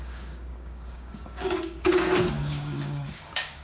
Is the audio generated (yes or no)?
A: yes